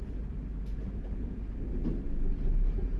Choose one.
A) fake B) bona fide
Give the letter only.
B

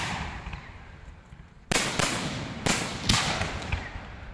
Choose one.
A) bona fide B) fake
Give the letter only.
A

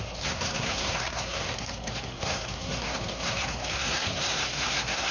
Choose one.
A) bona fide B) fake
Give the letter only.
B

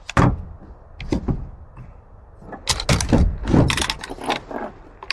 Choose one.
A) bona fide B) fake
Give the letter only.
A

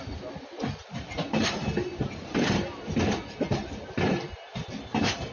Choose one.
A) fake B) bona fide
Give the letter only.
B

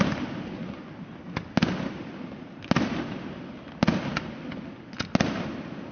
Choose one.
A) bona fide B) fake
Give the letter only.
A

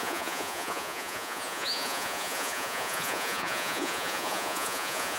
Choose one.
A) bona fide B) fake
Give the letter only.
B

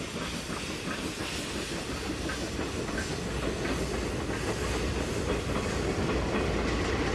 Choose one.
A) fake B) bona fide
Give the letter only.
B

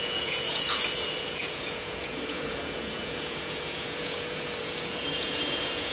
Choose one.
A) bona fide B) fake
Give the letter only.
B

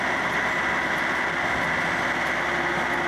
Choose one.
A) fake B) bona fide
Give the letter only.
B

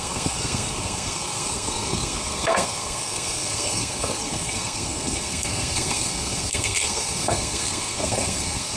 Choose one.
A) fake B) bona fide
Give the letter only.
A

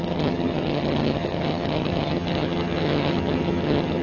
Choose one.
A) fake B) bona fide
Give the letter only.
A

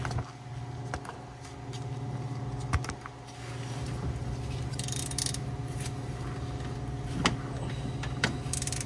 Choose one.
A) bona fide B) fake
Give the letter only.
A